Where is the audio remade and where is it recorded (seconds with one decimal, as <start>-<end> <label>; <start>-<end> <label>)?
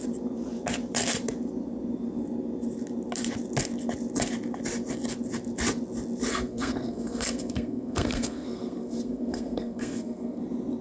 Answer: 0.0-6.3 recorded; 6.3-10.4 remade; 10.4-10.8 recorded